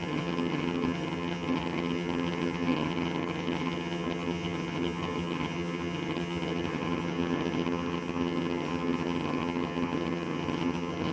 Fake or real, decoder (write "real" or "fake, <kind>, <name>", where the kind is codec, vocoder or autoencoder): fake, vocoder, HiFi-GAN